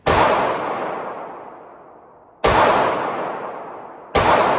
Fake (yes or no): no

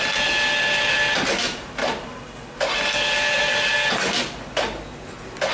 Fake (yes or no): no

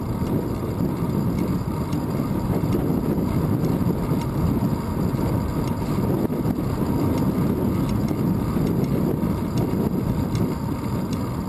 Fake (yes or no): no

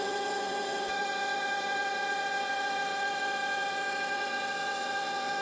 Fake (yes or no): yes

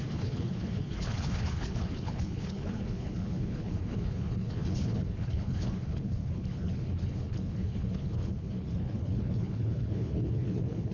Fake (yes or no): yes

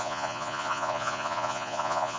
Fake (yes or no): yes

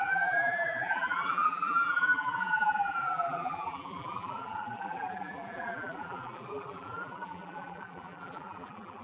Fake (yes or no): yes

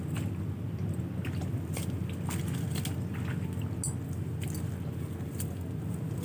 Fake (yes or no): no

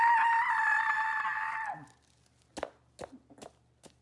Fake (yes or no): no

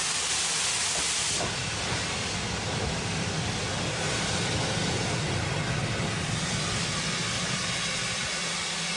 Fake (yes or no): no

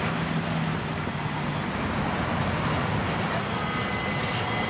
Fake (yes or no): no